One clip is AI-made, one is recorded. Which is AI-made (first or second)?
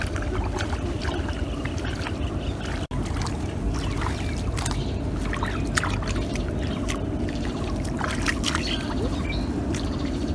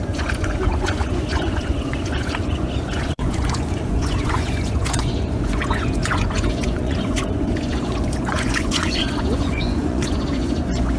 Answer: second